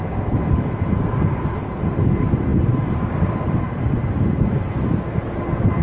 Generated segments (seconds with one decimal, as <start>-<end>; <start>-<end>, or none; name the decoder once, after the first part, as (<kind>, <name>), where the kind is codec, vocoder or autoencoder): none